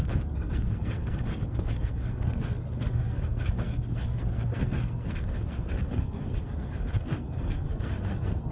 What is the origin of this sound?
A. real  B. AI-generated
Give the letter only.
B